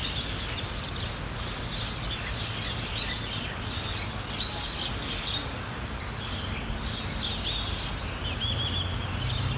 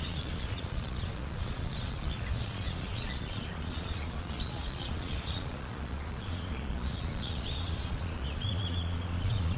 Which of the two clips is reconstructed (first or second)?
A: second